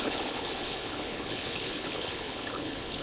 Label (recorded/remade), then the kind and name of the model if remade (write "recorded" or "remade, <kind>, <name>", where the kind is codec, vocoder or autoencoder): remade, codec, HILCodec